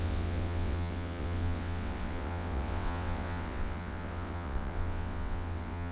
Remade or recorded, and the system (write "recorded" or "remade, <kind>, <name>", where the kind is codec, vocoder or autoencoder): remade, vocoder, WaveNeXt